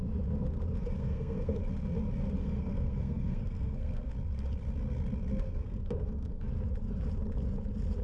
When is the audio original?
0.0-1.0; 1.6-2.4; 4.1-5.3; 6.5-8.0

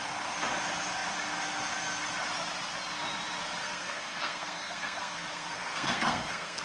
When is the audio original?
0.0-3.6

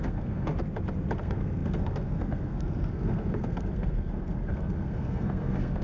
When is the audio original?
0.5-1.2

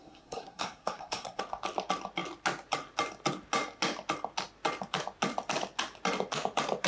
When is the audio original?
1.4-6.9

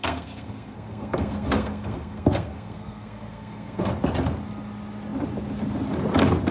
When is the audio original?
3.9-6.5

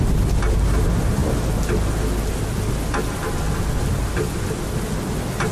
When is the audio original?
0.0-5.5

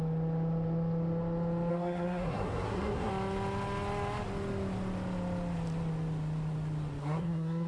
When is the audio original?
0.0-1.7; 3.1-7.0